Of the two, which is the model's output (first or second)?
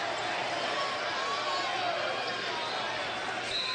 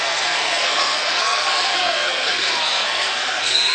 second